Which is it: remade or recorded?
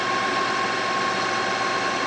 recorded